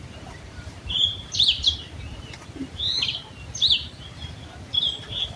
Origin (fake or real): fake